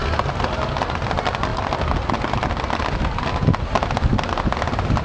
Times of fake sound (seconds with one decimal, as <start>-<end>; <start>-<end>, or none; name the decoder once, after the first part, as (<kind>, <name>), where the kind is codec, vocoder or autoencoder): none